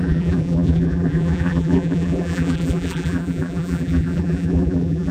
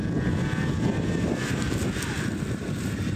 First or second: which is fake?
first